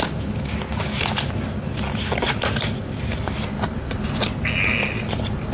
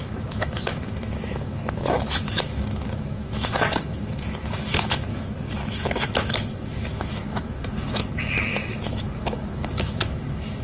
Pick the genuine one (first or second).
first